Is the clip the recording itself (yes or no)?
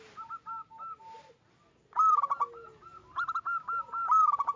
yes